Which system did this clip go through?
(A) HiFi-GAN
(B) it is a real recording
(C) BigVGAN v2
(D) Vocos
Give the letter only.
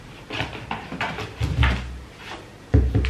B